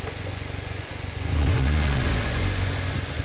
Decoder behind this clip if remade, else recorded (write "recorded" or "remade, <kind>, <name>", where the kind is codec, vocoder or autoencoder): remade, vocoder, Vocos